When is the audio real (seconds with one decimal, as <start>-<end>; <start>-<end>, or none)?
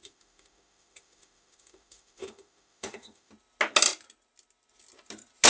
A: 3.3-5.5